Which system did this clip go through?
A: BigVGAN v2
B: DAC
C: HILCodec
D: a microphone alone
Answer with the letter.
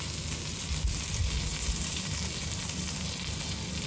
D